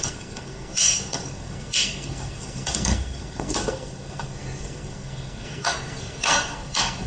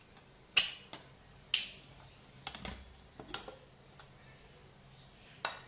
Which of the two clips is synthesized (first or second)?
first